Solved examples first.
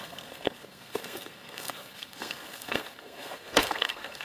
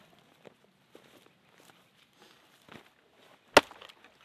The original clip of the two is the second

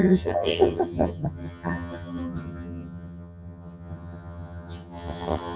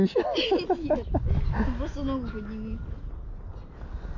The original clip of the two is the second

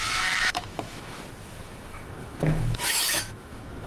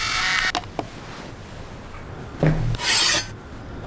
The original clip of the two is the second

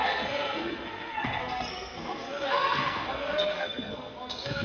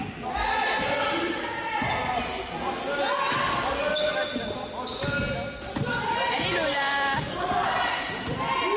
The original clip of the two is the second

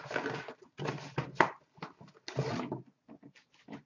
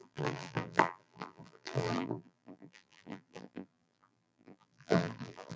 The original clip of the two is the first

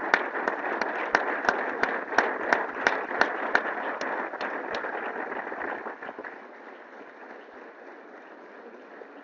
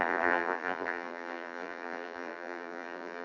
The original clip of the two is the first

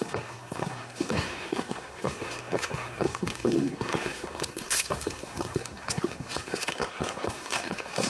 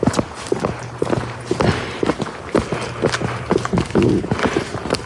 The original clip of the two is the second